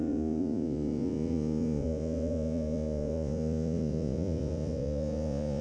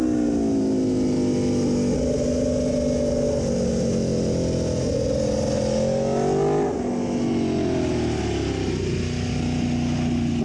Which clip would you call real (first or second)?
second